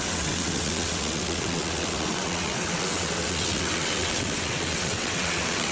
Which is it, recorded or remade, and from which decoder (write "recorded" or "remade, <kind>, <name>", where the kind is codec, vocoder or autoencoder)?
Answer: remade, vocoder, WaveNeXt